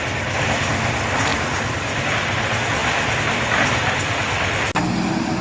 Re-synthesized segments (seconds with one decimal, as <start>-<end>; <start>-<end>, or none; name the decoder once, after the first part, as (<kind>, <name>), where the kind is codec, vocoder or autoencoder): none